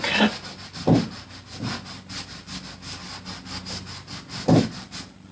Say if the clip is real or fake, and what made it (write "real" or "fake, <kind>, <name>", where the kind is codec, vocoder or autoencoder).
real